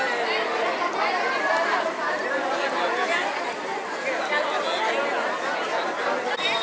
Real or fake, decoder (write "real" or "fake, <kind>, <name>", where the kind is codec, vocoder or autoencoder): real